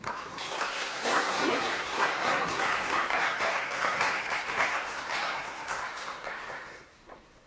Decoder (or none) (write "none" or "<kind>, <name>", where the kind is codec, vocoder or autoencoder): codec, SNAC